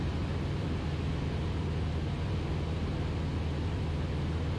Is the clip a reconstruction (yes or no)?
no